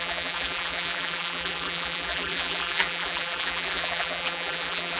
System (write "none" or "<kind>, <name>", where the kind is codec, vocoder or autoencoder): vocoder, BigVGAN v2